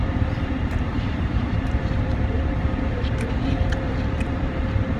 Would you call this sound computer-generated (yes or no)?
yes